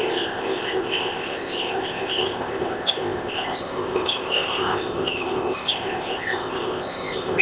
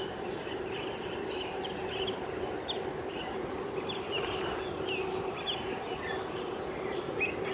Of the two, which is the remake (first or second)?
first